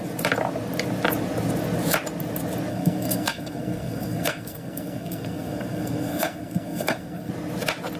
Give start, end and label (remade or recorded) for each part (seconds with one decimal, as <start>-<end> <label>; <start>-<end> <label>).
0.0-2.7 recorded; 2.7-7.3 remade; 7.3-8.0 recorded